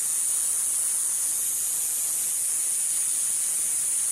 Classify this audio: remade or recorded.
remade